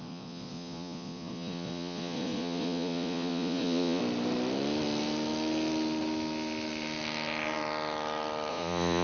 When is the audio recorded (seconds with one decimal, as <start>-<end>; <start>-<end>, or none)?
4.0-8.5